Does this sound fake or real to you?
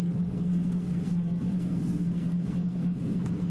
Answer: fake